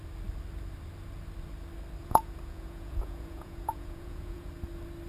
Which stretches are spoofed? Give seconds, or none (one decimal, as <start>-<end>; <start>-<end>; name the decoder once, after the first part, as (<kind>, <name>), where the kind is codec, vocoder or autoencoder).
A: 2.0-4.5 (vocoder, Vocos)